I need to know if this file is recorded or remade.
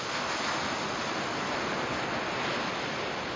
recorded